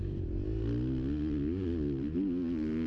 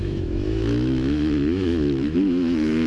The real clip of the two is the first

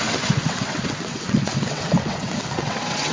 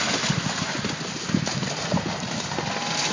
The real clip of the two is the second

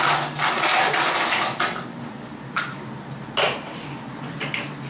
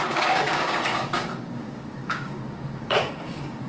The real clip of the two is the first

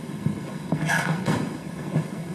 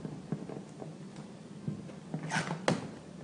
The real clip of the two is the second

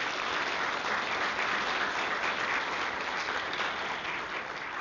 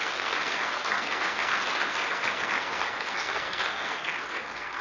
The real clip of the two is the first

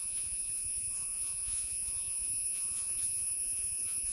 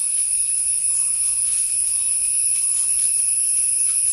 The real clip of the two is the second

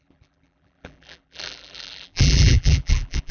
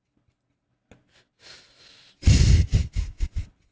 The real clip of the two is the second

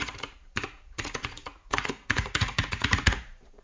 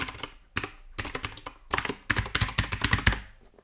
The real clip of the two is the second